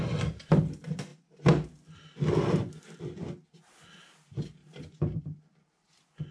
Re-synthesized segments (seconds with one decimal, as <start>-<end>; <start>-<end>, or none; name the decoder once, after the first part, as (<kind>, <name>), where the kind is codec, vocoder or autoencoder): 4.6-5.2 (vocoder, BigVGAN v2)